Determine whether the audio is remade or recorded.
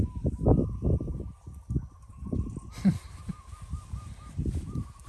recorded